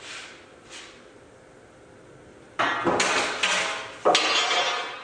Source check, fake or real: real